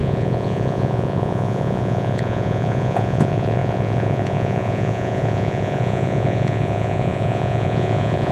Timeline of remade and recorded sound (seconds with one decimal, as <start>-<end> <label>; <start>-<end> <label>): 0.0-8.3 remade